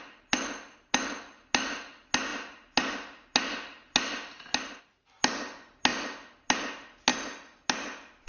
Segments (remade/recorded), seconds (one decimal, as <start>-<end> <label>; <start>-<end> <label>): 0.0-8.3 recorded